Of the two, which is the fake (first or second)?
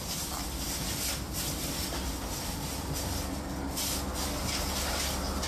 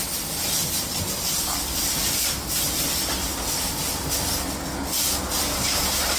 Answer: second